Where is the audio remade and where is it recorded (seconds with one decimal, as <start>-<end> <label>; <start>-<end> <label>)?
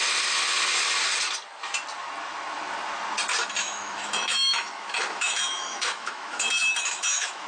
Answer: 0.0-3.6 recorded; 3.6-7.5 remade